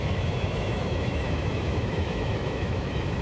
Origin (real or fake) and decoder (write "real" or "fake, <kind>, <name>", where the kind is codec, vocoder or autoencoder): fake, autoencoder, DAC-VAE